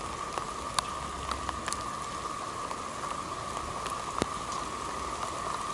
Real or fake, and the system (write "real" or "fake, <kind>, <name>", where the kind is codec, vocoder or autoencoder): real